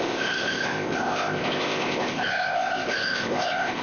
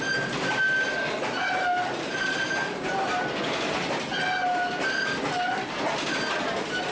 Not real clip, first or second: first